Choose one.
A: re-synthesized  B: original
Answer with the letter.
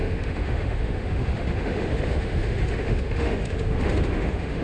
A